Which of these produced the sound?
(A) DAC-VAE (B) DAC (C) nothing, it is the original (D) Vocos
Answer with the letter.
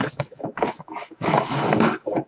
B